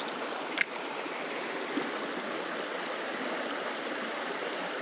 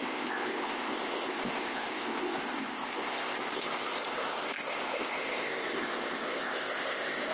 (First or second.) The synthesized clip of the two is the second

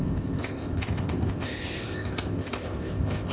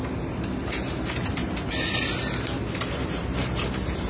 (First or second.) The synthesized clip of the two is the first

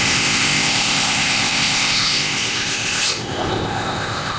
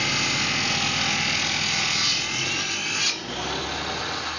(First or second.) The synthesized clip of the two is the first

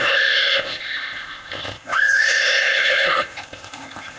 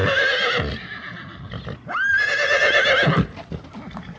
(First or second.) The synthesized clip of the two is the first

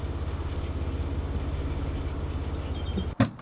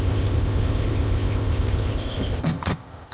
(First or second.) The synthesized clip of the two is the second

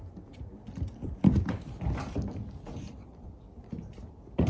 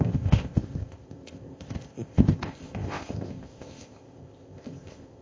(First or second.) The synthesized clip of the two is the second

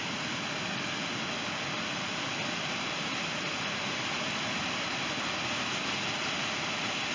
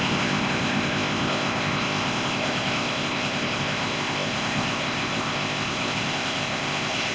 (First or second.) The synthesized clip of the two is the second